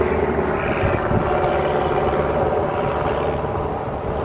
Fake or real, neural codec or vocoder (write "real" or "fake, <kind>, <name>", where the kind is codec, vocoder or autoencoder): real